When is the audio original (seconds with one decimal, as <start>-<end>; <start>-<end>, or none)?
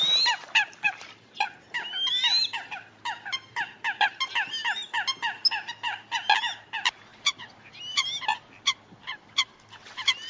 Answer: 0.0-10.3